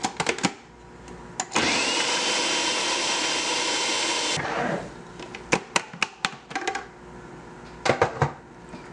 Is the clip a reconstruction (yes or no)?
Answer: no